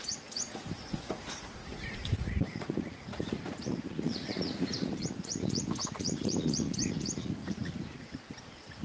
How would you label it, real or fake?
fake